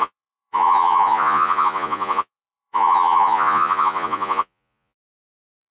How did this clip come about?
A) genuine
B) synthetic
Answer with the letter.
B